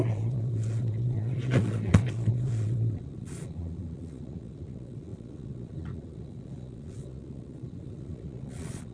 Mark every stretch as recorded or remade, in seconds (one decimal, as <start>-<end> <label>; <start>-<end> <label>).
0.0-8.9 remade